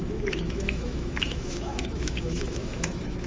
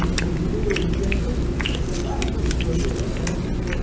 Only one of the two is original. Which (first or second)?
second